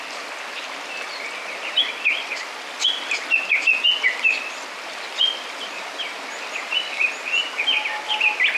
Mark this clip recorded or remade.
recorded